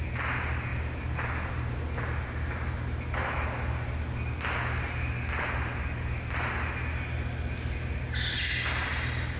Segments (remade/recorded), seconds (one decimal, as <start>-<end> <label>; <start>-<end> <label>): 0.0-9.4 recorded